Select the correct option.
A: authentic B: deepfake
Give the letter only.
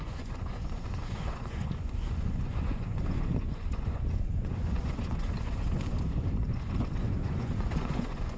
B